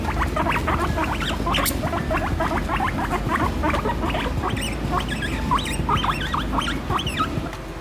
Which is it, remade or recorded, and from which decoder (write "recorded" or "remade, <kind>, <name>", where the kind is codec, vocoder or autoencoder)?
recorded